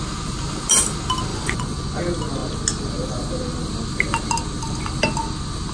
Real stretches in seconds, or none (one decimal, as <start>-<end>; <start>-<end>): 0.0-1.3; 2.0-5.7